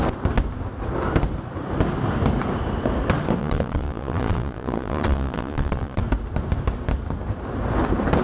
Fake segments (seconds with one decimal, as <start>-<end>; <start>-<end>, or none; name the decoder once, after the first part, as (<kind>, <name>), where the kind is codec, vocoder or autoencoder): 3.4-6.0 (vocoder, Vocos)